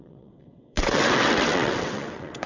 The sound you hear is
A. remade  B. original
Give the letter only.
A